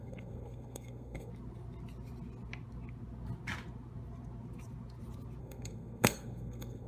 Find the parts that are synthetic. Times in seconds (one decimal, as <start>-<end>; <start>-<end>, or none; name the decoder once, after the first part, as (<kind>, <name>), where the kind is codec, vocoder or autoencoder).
0.0-1.3 (codec, SNAC); 5.4-6.9